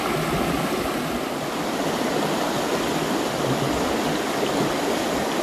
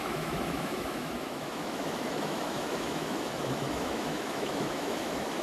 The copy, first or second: second